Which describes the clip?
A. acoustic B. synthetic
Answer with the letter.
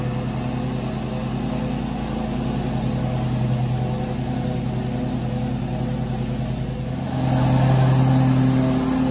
A